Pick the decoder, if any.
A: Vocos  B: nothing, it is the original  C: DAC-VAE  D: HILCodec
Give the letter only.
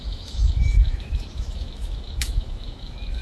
C